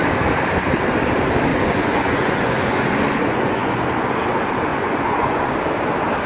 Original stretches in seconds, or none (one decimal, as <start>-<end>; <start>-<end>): 0.0-1.5; 3.8-4.7; 5.5-6.3